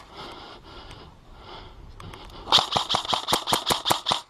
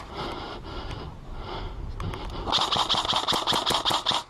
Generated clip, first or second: first